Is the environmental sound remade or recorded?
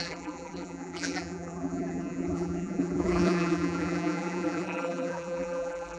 remade